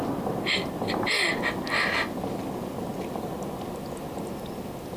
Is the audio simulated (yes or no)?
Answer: no